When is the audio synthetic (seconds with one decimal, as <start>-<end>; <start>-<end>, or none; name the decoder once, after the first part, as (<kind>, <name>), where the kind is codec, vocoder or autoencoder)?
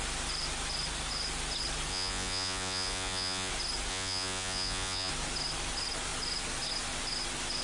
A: 1.9-3.5 (vocoder, Vocos); 3.9-5.1